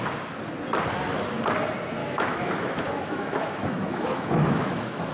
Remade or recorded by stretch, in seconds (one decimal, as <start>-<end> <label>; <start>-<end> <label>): 0.0-2.0 recorded; 2.0-5.1 remade